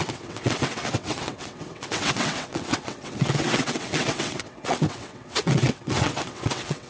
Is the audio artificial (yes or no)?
yes